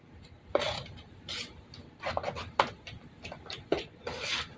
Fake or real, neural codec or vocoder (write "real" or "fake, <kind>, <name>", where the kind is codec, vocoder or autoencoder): real